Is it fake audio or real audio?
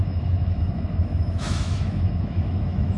fake